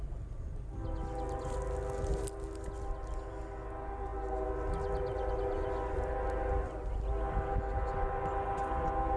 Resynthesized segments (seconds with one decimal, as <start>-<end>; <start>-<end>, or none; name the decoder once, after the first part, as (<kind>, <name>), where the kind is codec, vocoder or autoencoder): none